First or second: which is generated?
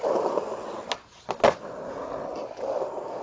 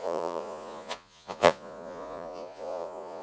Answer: second